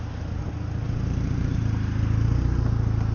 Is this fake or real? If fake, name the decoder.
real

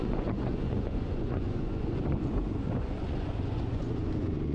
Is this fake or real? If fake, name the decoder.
fake, vocoder, Vocos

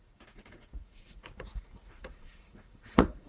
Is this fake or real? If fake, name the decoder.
fake, vocoder, Vocos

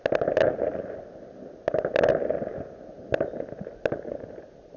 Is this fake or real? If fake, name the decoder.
real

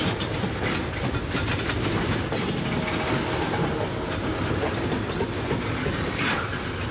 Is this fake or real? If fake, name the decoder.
real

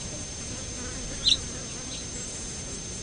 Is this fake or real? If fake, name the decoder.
real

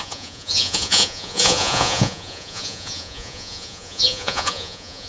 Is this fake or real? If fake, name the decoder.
fake, vocoder, Vocos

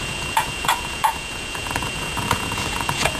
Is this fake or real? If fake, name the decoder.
fake, vocoder, Vocos